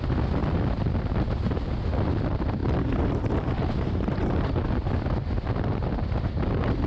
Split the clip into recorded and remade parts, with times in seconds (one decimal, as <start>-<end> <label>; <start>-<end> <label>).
0.0-0.4 recorded; 0.4-1.8 remade; 1.8-2.6 recorded; 2.6-6.5 remade; 6.5-6.9 recorded